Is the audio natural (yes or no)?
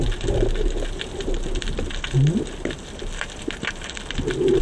yes